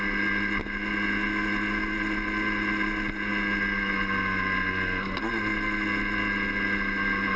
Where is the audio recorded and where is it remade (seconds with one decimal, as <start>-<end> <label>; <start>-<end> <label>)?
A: 0.0-7.4 recorded